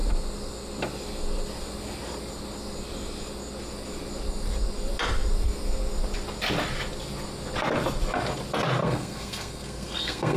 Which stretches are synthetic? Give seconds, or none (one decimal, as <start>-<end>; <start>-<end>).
8.8-10.4